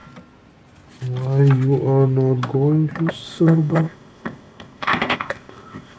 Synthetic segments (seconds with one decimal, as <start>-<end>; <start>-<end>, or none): 3.1-6.0